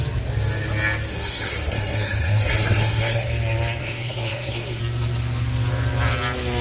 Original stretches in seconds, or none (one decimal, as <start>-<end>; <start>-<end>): 0.0-1.1; 3.3-3.8; 4.8-6.6